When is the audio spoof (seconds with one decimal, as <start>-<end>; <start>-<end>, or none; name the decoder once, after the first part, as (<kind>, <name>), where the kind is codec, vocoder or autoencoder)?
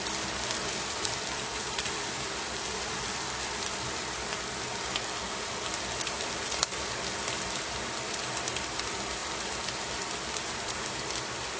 none